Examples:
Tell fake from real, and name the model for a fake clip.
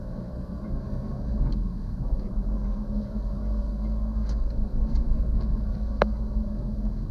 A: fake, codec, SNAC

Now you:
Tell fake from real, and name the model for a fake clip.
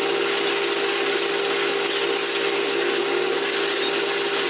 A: real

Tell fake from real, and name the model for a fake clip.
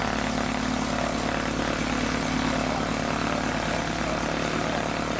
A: real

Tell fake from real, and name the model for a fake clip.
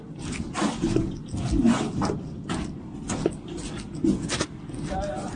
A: real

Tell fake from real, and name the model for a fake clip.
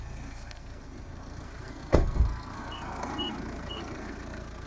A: fake, codec, SNAC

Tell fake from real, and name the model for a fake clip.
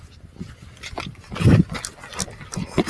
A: real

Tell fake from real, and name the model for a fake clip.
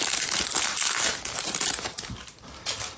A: fake, vocoder, BigVGAN v2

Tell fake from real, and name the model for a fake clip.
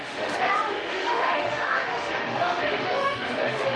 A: fake, autoencoder, DAC-VAE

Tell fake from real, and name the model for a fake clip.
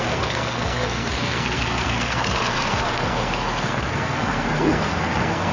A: fake, codec, SNAC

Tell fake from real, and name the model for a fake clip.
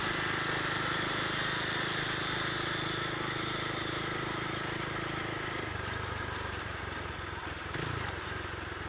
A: real